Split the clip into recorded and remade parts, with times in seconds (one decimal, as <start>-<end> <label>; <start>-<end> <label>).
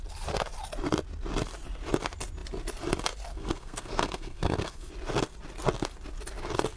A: 0.0-3.3 recorded; 3.3-4.9 remade; 4.9-6.8 recorded